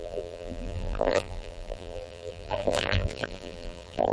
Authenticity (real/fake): fake